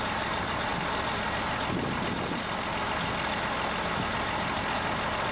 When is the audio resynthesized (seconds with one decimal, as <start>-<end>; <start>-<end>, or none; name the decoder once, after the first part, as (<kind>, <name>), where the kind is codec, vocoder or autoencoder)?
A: none